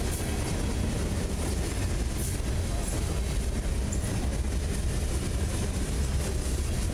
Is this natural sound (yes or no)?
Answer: yes